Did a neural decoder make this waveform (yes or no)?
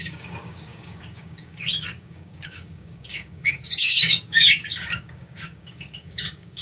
yes